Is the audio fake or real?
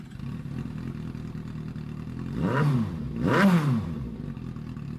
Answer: real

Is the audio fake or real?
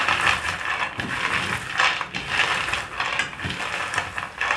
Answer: real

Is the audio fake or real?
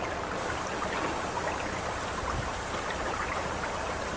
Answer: fake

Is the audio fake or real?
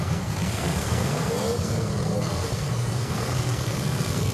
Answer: fake